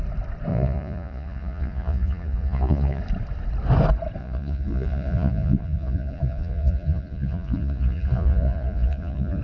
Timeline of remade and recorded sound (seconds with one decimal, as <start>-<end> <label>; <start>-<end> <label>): 0.0-0.5 recorded; 0.5-3.0 remade; 3.0-4.2 recorded; 4.2-9.4 remade

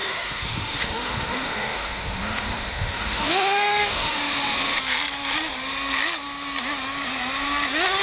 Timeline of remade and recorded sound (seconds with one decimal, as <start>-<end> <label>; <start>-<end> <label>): 0.0-4.8 remade; 4.8-8.0 recorded

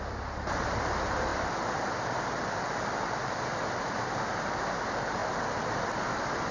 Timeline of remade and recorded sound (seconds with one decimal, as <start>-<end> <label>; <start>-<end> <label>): 0.0-1.3 recorded; 1.3-3.4 remade; 3.4-5.2 recorded; 5.2-6.5 remade

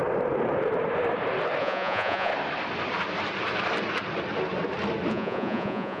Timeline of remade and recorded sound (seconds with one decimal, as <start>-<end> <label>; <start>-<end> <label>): 0.0-1.6 recorded; 1.6-2.3 remade; 2.3-5.1 recorded; 5.1-6.0 remade

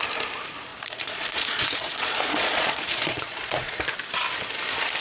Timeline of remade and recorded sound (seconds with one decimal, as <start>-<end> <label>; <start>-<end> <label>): 0.0-0.7 recorded; 0.7-3.7 remade; 3.7-5.0 recorded